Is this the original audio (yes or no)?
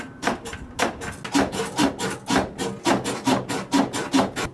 yes